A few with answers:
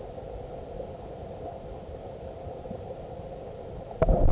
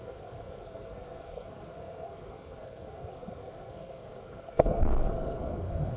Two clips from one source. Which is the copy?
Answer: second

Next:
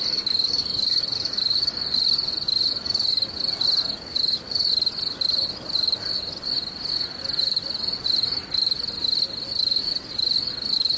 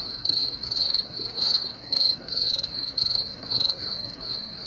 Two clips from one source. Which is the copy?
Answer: second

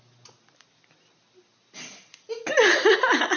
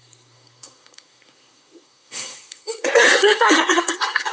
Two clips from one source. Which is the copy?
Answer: second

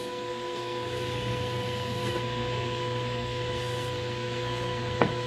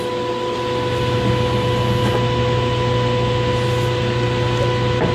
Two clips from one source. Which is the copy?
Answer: first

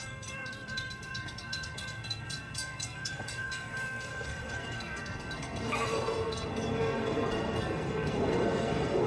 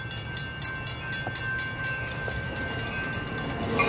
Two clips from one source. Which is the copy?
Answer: first